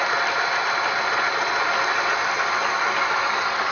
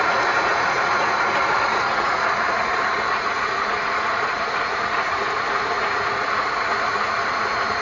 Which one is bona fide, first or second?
first